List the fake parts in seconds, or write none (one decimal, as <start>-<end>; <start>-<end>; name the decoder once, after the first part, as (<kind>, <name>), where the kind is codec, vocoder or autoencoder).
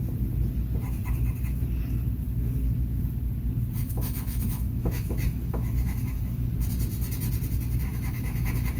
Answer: 3.8-6.5 (autoencoder, DAC-VAE); 7.9-8.8